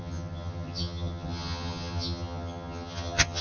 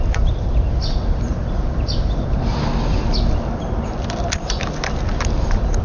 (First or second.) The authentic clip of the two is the second